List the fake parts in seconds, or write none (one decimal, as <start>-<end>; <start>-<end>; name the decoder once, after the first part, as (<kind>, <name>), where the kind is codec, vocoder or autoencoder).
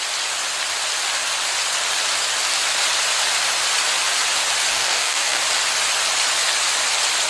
4.7-5.4 (codec, DAC)